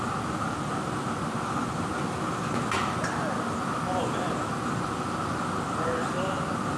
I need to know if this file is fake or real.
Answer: real